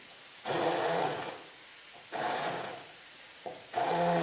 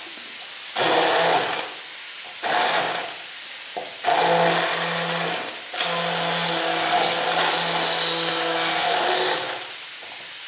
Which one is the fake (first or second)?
first